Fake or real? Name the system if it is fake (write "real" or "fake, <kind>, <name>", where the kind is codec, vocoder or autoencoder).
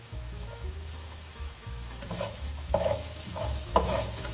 fake, autoencoder, DAC-VAE